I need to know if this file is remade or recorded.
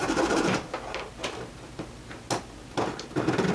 recorded